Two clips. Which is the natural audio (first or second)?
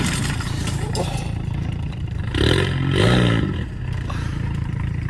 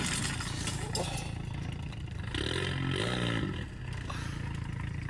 second